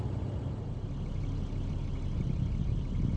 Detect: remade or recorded recorded